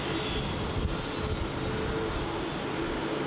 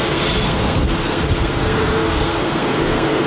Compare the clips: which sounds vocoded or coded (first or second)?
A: second